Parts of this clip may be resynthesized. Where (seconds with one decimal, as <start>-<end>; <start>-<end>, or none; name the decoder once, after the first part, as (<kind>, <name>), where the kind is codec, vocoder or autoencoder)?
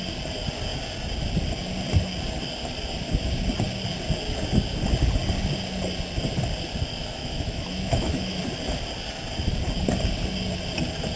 7.0-8.4 (autoencoder, DAC-VAE)